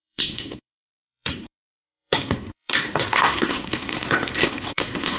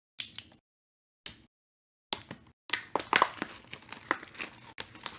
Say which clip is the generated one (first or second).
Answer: first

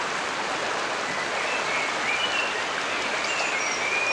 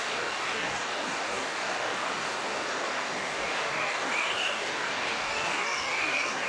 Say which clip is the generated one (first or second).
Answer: second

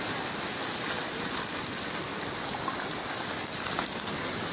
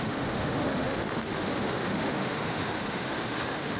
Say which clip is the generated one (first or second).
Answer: second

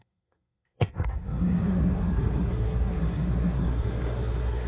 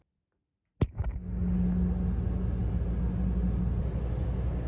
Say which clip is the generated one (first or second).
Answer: first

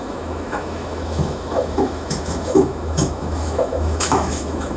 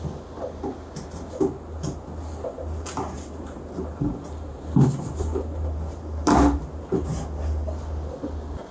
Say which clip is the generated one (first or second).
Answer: first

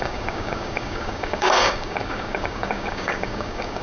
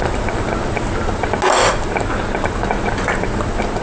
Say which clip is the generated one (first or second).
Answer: first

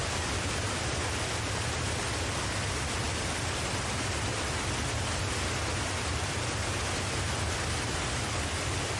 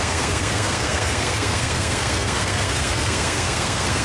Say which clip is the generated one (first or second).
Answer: second